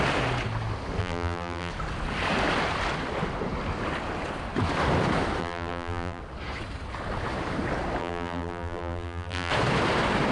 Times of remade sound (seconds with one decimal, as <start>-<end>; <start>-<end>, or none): 1.0-1.7; 5.4-6.2; 8.0-9.5